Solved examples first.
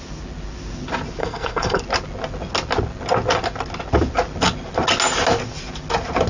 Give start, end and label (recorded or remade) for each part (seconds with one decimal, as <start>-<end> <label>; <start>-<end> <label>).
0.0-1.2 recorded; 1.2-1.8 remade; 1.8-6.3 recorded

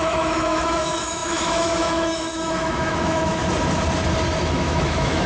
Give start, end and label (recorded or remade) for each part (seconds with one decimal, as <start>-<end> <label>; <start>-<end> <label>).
0.0-3.4 remade; 3.4-4.4 recorded; 4.4-5.3 remade

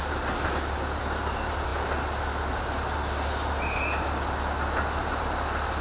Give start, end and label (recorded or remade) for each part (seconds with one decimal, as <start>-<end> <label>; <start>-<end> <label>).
0.0-5.8 recorded

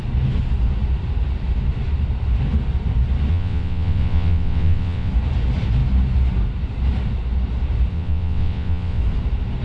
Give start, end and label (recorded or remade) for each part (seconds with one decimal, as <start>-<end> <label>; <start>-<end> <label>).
0.0-3.3 recorded; 3.3-5.1 remade; 5.1-7.9 recorded; 7.9-9.0 remade; 9.0-9.6 recorded

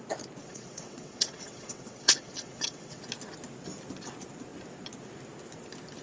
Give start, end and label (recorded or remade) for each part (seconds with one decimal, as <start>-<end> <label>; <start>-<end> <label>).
0.0-0.4 recorded; 0.4-3.0 remade; 3.0-6.0 recorded

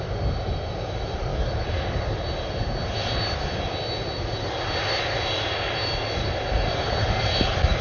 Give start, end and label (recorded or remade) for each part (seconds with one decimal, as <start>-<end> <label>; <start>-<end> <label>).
0.0-7.8 recorded

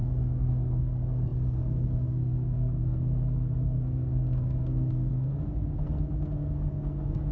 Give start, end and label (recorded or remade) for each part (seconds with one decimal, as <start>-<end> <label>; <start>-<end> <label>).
0.0-7.3 remade